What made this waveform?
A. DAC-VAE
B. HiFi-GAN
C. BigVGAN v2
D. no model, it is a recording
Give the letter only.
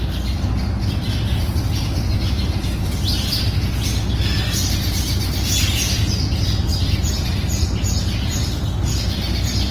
D